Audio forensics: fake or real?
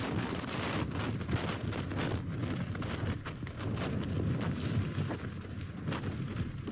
real